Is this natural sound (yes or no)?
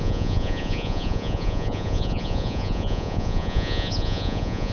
no